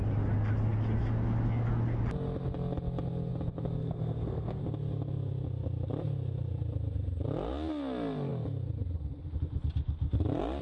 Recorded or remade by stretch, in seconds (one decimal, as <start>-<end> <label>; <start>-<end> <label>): 0.0-3.8 recorded; 3.8-4.6 remade; 4.6-10.6 recorded